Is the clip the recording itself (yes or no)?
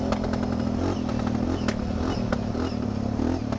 yes